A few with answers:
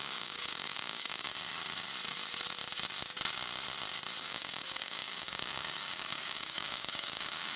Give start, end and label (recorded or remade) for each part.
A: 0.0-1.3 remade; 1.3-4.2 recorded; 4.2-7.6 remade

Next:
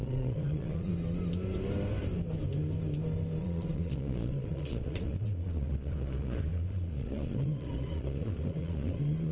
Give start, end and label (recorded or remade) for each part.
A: 0.0-0.9 remade; 0.9-3.4 recorded; 3.4-9.3 remade